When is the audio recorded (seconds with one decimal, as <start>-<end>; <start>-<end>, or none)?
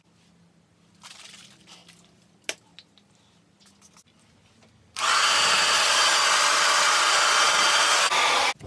0.0-8.7